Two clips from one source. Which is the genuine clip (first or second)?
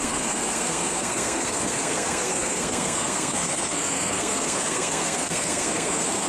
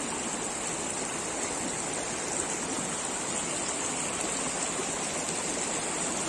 second